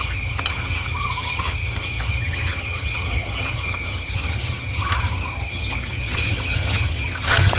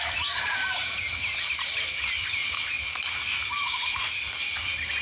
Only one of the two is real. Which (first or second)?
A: second